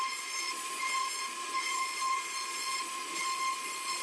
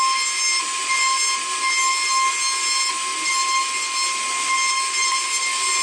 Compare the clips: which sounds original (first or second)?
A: second